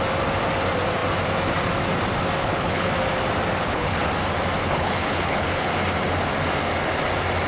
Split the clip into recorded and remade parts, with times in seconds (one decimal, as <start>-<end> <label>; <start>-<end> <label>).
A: 0.0-2.4 recorded; 2.4-2.9 remade; 2.9-3.6 recorded; 3.6-4.1 remade; 4.1-4.6 recorded; 4.6-5.7 remade; 5.7-7.5 recorded